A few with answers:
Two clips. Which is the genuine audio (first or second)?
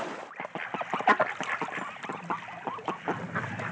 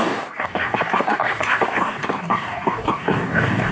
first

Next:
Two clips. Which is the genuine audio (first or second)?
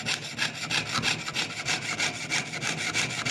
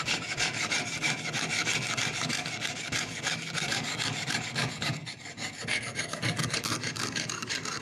first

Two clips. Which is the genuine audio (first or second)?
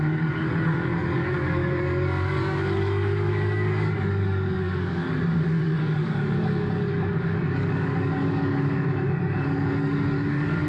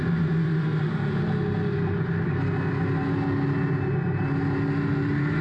second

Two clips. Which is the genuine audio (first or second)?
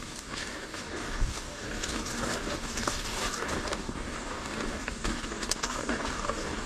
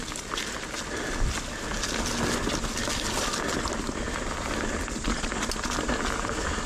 second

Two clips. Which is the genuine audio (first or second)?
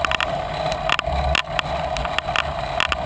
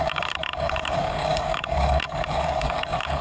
first